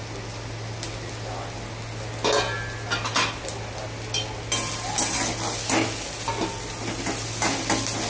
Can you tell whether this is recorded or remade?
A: recorded